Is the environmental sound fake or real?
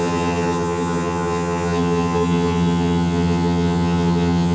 fake